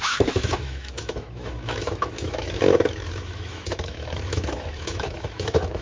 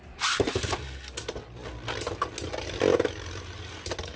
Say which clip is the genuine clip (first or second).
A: second